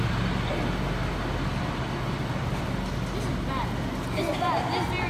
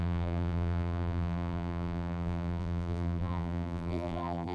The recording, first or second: first